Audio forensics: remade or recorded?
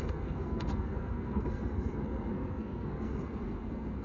remade